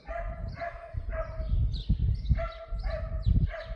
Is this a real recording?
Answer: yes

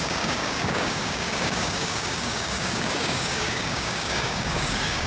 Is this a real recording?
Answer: no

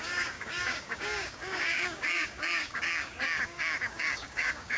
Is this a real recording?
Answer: no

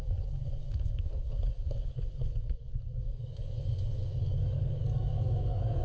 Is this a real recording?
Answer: no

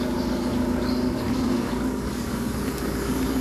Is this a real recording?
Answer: no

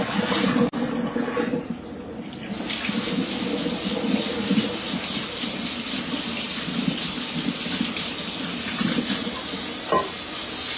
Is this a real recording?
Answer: yes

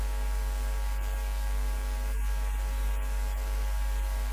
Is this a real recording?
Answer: no